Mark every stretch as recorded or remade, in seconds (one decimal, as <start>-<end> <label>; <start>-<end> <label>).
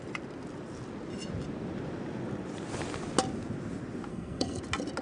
0.0-4.1 recorded; 4.1-4.6 remade; 4.6-5.0 recorded